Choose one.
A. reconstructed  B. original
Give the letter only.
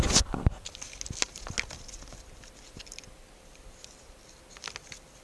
B